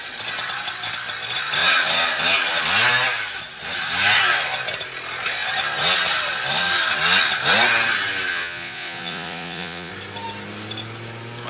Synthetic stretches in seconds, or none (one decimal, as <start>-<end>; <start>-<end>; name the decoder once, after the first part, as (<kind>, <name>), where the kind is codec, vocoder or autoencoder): 8.3-9.9 (vocoder, Vocos)